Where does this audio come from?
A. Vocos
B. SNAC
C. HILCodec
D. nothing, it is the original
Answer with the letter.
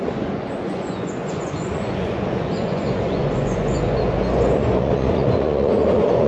A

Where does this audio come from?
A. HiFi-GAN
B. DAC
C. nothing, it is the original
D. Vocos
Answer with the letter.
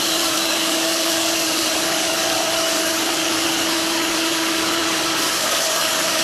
B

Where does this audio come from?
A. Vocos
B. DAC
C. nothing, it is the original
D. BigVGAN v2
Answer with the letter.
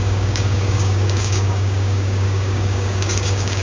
B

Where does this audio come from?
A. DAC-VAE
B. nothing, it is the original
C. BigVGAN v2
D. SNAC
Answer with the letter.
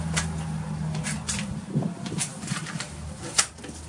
C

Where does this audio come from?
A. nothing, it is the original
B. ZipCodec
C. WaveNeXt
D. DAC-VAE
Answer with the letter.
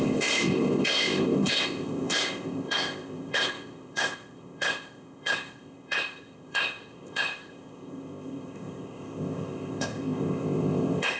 B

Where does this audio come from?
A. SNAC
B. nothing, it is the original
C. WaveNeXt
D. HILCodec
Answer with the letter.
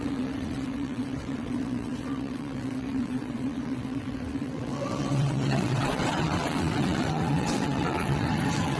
C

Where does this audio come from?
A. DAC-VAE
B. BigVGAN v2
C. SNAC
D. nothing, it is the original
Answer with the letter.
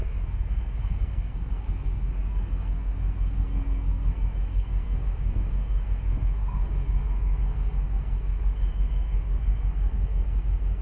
C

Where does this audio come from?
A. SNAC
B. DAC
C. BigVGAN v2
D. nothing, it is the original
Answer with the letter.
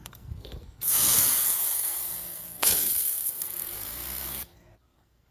A